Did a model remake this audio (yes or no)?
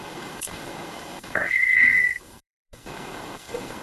yes